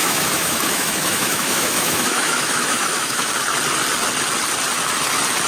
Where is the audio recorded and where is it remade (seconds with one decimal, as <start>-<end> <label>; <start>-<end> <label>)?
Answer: 0.0-3.3 remade; 3.3-5.5 recorded